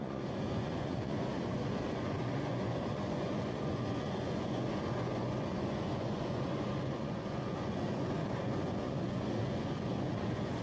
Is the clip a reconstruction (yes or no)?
yes